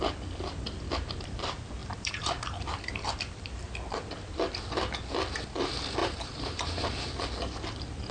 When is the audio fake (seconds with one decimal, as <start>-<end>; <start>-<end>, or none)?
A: 1.8-3.2; 6.0-7.1